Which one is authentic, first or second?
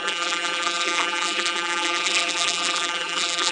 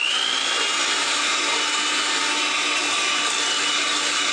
second